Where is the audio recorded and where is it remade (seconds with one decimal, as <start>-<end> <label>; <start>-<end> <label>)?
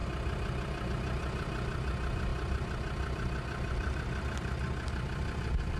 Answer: 0.0-5.8 recorded